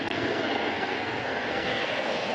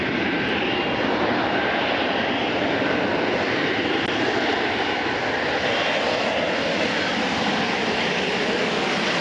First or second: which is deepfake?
first